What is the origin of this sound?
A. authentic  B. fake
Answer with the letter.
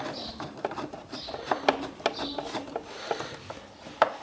A